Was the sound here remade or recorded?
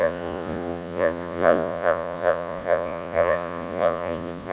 remade